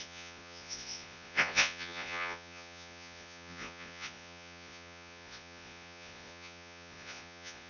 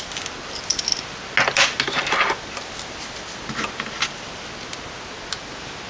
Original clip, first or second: second